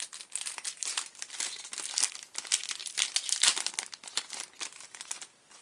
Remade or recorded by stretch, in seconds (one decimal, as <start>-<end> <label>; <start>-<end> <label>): 0.0-5.6 recorded